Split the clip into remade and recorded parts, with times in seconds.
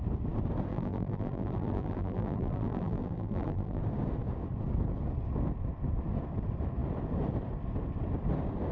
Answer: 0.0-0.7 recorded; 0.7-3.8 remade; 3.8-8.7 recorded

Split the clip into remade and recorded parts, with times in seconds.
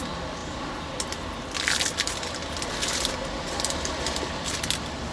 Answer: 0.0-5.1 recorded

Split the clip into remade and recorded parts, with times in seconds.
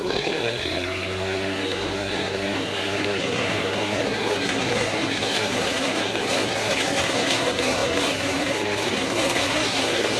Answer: 0.0-10.2 remade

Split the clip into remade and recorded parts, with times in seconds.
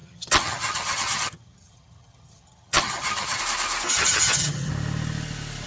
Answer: 0.0-3.4 remade; 3.4-4.0 recorded; 4.0-4.7 remade; 4.7-5.7 recorded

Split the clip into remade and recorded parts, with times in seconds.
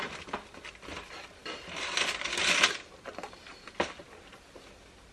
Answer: 0.0-5.1 recorded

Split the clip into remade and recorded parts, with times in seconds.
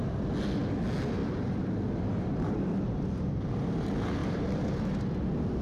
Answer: 0.0-1.2 recorded; 1.2-3.5 remade; 3.5-4.2 recorded; 4.2-5.0 remade; 5.0-5.6 recorded